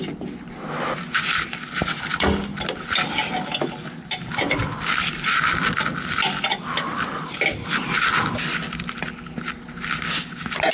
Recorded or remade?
recorded